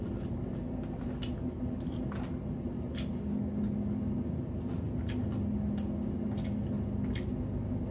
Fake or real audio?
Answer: real